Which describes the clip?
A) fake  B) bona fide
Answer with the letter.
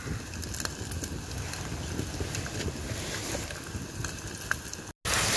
B